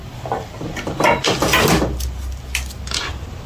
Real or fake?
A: real